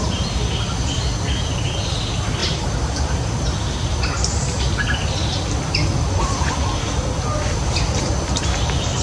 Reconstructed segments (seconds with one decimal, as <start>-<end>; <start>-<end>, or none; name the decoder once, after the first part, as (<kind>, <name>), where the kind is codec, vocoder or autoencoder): 0.0-9.0 (vocoder, BigVGAN v2)